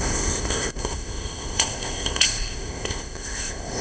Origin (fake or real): fake